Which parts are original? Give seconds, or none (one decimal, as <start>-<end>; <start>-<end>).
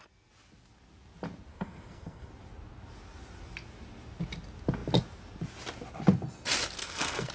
0.0-1.5; 2.3-6.8